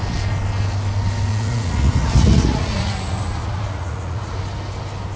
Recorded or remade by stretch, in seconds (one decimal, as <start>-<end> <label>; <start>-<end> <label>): 0.0-1.3 recorded; 1.3-4.4 remade; 4.4-5.2 recorded